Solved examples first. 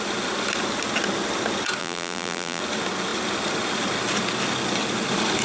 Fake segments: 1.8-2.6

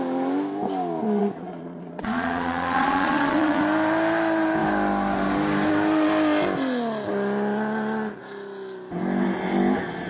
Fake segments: 1.2-3.6

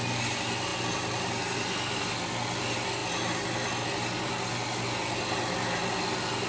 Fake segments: none

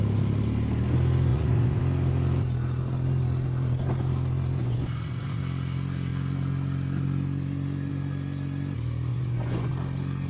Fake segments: 1.3-1.8; 4.6-5.4; 9.1-9.7

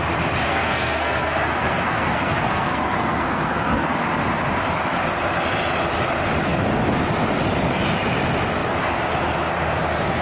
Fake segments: 0.5-4.0

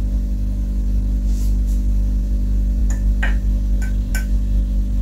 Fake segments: none

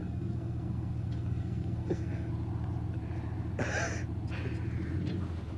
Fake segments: 0.0-2.3

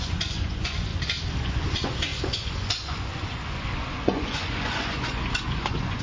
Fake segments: 0.0-0.9; 1.4-6.0